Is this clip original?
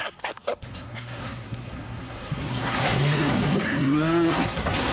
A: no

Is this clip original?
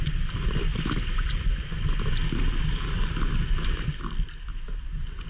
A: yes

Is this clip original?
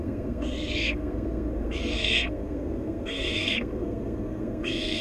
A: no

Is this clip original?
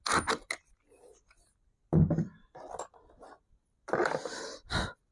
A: yes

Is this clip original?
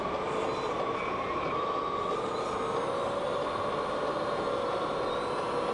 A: yes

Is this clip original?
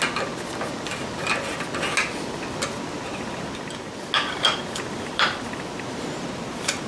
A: yes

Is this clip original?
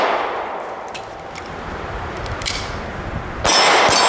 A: yes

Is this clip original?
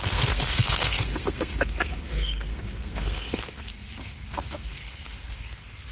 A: no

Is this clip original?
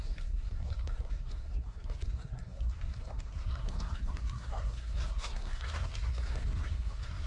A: no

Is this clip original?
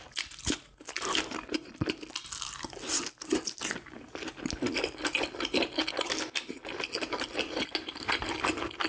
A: yes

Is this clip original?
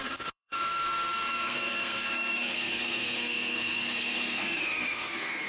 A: no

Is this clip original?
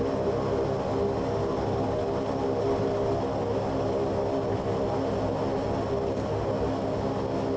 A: yes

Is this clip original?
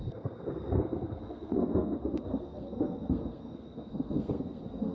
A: no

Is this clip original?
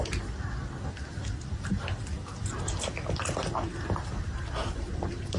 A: yes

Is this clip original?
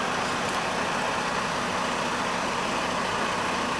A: yes